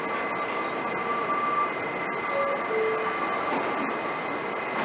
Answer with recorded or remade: recorded